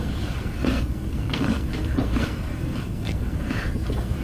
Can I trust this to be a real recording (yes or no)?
no